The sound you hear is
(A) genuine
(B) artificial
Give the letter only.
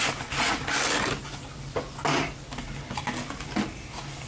A